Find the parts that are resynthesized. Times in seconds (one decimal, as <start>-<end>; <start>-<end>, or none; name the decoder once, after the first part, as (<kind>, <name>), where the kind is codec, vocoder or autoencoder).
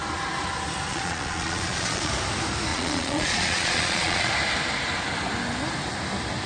0.9-2.1 (vocoder, Vocos); 2.7-4.3